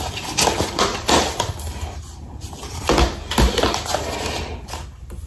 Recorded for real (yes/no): yes